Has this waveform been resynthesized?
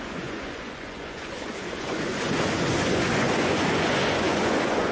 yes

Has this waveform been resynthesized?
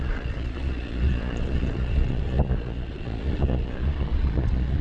yes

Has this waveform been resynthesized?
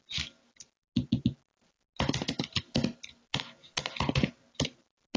no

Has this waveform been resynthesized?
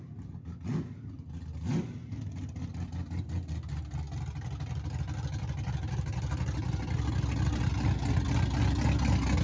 no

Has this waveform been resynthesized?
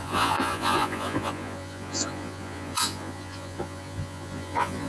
yes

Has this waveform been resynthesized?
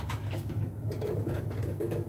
yes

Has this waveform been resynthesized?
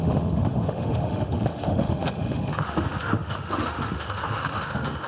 yes